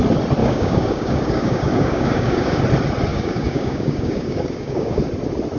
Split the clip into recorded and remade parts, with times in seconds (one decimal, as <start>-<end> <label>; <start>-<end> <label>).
0.0-0.4 recorded; 0.4-2.6 remade; 2.6-3.1 recorded; 3.1-5.0 remade; 5.0-5.6 recorded